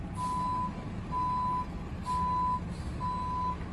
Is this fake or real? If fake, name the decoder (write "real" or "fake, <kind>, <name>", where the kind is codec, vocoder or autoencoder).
real